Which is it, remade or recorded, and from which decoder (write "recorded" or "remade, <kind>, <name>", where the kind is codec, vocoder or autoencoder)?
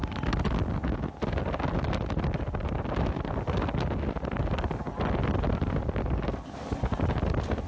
recorded